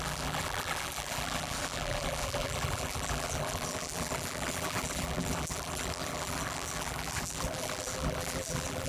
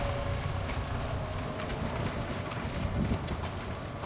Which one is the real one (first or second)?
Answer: second